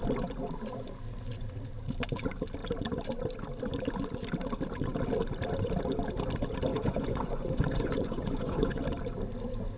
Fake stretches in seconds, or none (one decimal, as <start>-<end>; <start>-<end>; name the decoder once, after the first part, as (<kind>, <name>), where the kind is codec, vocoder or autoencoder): 6.7-8.8 (vocoder, Vocos)